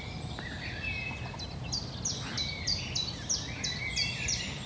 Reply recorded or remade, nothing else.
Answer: recorded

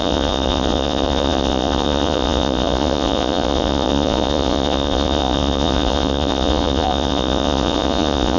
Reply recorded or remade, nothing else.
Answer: remade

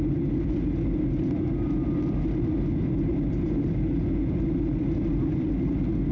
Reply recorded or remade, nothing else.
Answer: recorded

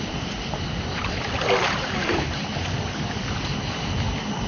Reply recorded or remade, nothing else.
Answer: recorded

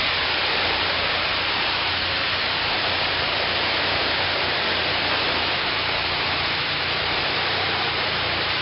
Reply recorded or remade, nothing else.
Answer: remade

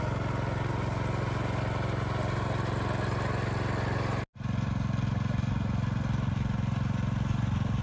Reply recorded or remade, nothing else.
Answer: recorded